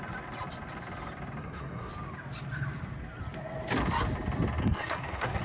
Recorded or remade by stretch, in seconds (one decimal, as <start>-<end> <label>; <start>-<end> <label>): 0.0-1.4 recorded; 1.4-1.9 remade; 1.9-4.6 recorded; 4.6-5.4 remade